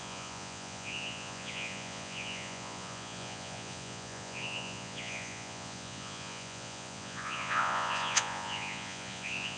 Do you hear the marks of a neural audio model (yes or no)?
yes